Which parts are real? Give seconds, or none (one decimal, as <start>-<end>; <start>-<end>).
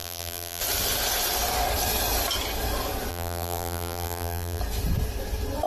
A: 0.6-3.1; 4.6-5.7